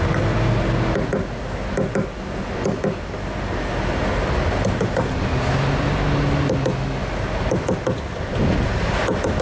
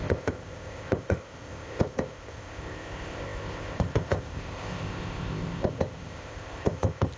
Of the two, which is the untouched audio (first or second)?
first